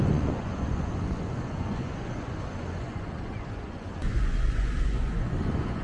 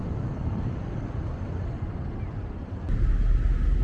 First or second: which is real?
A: second